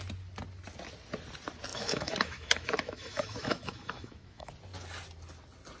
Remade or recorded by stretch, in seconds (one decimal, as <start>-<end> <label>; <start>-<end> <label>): 0.0-1.7 recorded; 1.7-4.5 remade; 4.5-5.8 recorded